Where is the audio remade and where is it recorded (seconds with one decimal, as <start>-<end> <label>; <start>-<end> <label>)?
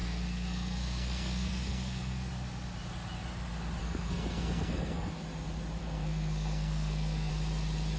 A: 0.0-2.3 remade; 2.3-3.8 recorded; 3.8-5.1 remade; 5.1-5.8 recorded; 5.8-7.3 remade; 7.3-8.0 recorded